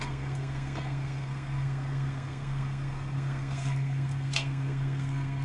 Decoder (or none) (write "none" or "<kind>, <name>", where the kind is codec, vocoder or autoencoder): codec, SNAC